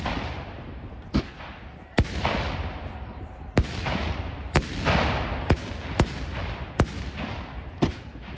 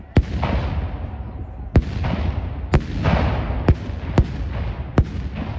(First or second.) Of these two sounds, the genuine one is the second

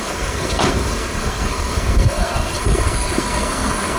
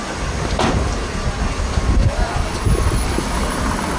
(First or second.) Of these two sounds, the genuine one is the second